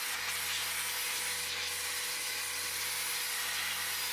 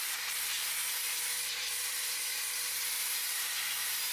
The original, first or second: first